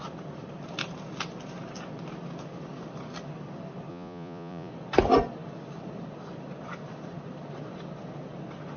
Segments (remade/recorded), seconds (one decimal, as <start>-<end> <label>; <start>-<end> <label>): 0.0-3.9 recorded; 3.9-4.7 remade; 4.7-8.8 recorded